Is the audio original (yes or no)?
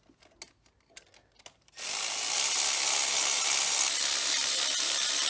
yes